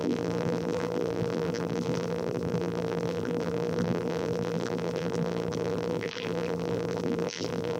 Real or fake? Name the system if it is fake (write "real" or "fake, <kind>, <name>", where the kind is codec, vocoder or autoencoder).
fake, vocoder, BigVGAN v2